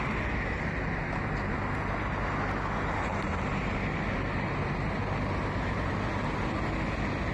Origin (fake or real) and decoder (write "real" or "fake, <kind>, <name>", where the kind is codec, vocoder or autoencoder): real